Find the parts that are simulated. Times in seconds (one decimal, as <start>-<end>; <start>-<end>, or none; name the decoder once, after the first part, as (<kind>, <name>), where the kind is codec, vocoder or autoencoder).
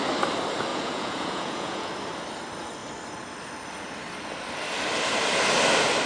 0.7-1.9 (vocoder, Vocos)